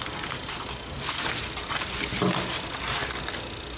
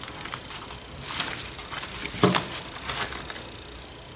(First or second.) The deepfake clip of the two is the second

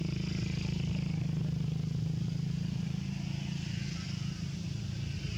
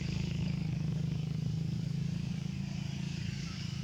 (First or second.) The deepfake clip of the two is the second